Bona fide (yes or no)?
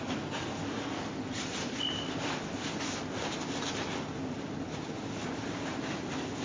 yes